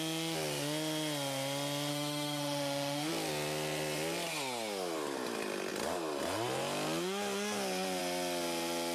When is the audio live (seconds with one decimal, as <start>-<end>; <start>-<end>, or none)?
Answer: 0.0-1.9; 3.1-8.9